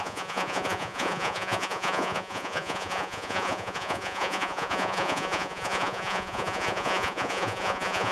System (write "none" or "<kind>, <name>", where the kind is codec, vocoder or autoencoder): vocoder, Vocos